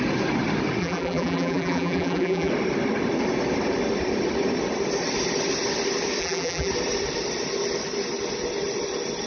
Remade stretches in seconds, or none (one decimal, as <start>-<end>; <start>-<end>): 0.8-2.5; 6.2-6.7